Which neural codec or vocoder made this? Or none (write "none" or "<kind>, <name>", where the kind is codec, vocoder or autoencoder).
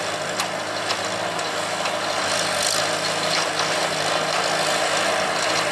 none